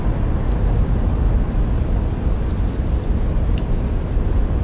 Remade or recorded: recorded